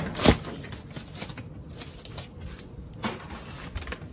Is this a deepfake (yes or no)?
no